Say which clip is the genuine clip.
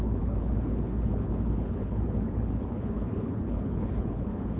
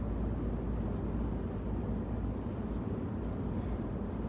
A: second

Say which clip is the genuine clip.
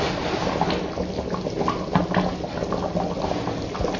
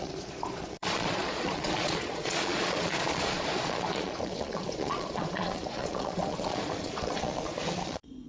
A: first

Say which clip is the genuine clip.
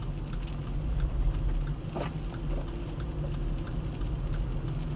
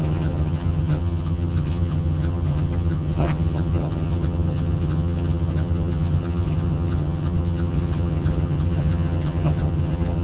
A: first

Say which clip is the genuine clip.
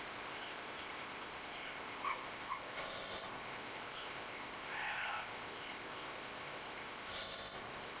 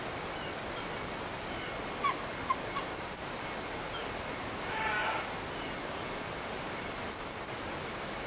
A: second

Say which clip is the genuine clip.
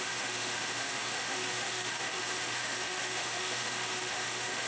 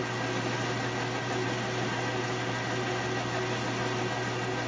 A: second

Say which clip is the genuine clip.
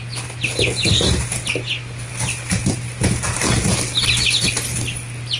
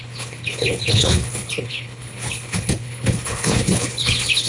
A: first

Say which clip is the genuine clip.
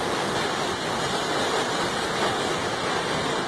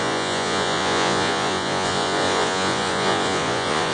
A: first